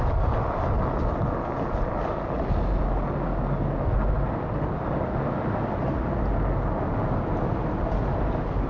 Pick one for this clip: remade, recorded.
recorded